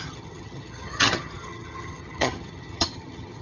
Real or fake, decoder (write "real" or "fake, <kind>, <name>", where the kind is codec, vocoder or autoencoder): fake, vocoder, HiFi-GAN